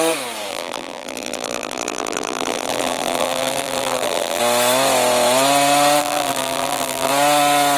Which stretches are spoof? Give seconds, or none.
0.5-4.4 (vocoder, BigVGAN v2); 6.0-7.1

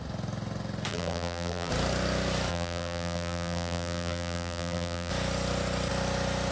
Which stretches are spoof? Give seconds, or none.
0.9-1.7 (vocoder, BigVGAN v2); 2.5-5.1